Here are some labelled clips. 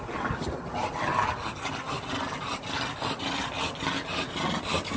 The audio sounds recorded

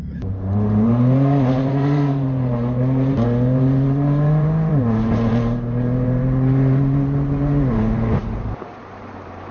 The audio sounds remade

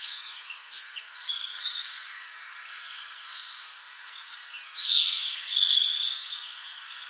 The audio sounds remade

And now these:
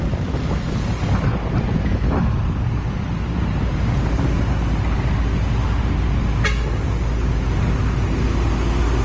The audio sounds recorded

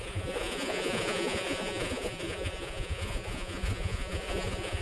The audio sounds remade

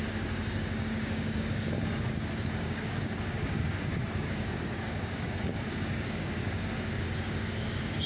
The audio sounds remade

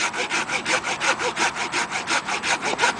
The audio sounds recorded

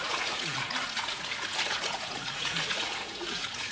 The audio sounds remade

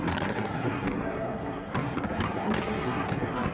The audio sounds remade